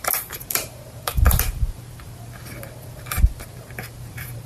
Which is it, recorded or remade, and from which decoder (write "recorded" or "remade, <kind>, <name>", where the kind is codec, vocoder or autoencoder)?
remade, vocoder, BigVGAN v2